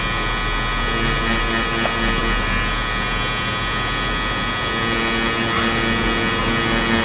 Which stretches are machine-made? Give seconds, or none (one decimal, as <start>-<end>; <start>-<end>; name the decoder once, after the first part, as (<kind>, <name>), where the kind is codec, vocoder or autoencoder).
none